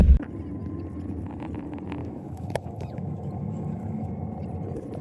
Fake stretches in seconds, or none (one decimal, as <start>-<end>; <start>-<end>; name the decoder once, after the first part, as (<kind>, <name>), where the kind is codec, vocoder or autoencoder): 2.0-4.1 (autoencoder, DAC-VAE)